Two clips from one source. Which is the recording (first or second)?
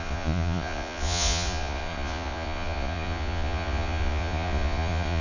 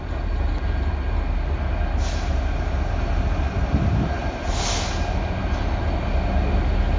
second